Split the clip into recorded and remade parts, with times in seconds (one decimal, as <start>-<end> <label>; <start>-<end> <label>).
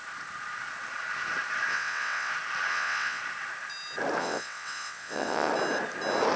0.0-1.7 recorded; 1.7-2.3 remade; 2.3-2.7 recorded; 2.7-3.2 remade; 3.2-4.2 recorded; 4.2-5.5 remade; 5.5-6.4 recorded